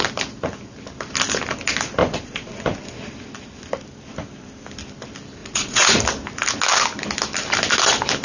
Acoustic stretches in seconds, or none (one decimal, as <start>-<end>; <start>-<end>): 0.0-2.0; 2.8-5.4; 6.0-8.2